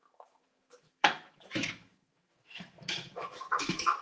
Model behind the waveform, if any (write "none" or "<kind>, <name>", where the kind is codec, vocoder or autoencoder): autoencoder, DAC-VAE